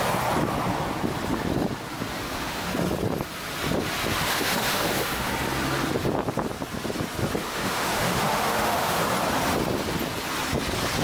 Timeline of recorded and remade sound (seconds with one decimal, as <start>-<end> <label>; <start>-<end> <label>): 0.0-2.1 recorded; 2.1-2.7 remade; 2.7-4.1 recorded; 4.1-5.3 remade; 5.3-7.4 recorded; 7.4-9.0 remade; 9.0-11.0 recorded